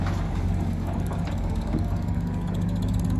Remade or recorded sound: remade